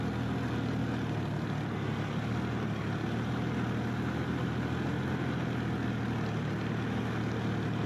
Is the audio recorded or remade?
recorded